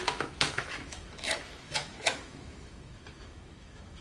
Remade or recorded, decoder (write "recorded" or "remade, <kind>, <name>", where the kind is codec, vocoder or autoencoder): remade, autoencoder, DAC-VAE